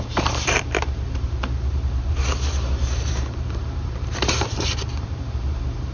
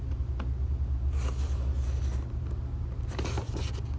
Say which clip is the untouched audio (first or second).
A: second